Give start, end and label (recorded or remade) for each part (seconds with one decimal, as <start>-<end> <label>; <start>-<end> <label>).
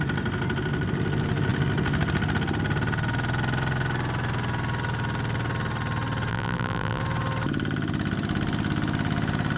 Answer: 0.0-6.3 recorded; 6.3-7.0 remade; 7.0-9.6 recorded